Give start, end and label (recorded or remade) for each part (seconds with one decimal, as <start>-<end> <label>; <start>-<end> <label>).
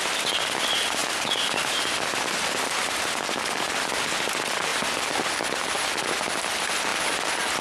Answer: 0.0-7.6 recorded